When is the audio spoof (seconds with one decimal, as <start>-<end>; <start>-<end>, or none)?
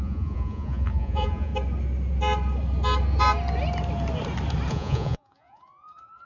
0.0-1.5; 4.7-6.3